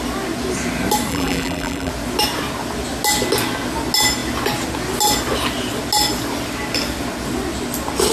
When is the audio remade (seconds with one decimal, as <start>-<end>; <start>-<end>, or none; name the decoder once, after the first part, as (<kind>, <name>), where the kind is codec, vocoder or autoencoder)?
1.1-1.9 (vocoder, BigVGAN v2)